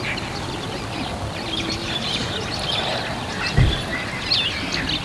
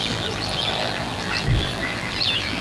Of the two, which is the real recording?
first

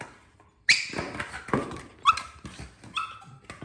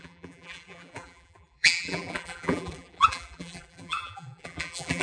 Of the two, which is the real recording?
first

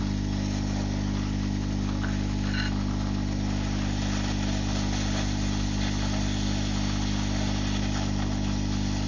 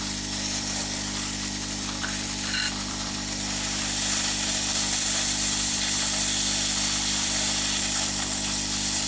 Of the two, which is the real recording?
first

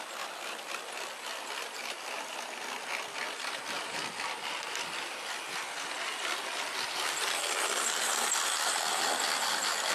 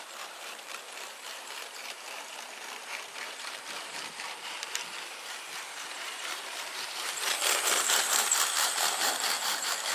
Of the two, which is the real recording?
first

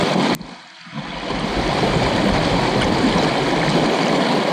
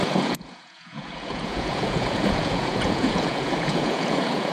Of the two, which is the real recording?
first